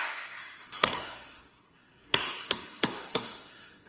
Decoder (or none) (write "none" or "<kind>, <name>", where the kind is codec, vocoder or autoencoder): codec, SNAC